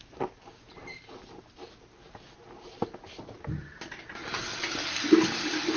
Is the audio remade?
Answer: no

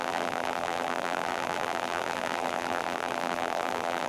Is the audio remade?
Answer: yes